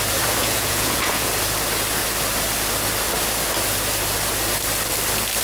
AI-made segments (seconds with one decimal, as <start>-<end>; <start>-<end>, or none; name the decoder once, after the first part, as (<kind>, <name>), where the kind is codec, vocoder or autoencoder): 0.4-1.3 (vocoder, Vocos)